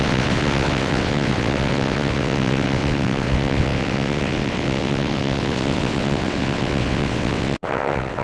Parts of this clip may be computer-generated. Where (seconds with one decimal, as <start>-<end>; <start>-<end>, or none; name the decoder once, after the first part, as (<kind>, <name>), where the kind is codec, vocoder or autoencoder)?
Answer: 0.0-8.2 (vocoder, WaveNeXt)